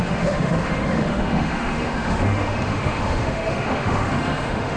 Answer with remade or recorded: remade